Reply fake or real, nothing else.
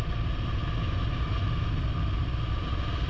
real